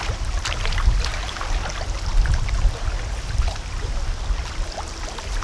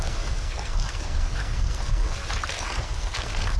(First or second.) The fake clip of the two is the second